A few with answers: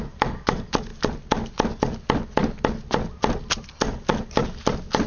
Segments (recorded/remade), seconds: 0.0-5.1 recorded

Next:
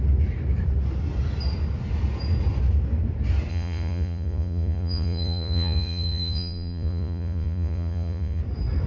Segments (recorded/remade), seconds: 0.0-3.5 recorded; 3.5-8.4 remade; 8.4-8.9 recorded

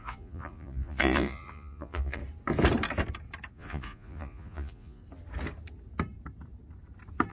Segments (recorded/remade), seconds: 0.0-2.2 remade; 2.2-3.5 recorded; 3.5-5.0 remade; 5.0-7.3 recorded

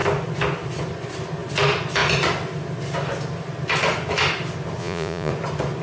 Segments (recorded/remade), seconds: 0.0-4.8 recorded; 4.8-5.3 remade; 5.3-5.8 recorded

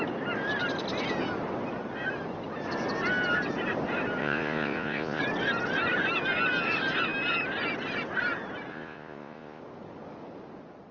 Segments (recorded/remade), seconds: 0.0-4.2 recorded; 4.2-5.2 remade; 5.2-8.7 recorded; 8.7-9.6 remade; 9.6-10.9 recorded

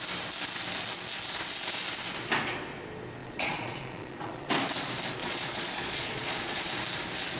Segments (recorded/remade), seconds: 0.0-3.2 recorded; 3.2-4.5 remade; 4.5-5.2 recorded; 5.2-6.7 remade; 6.7-7.4 recorded

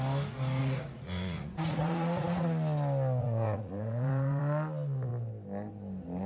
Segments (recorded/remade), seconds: 0.0-0.6 recorded; 0.6-2.4 remade; 2.4-3.2 recorded; 3.2-4.4 remade; 4.4-6.3 recorded